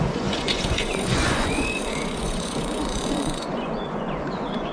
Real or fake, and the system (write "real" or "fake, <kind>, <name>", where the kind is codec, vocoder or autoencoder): fake, vocoder, Vocos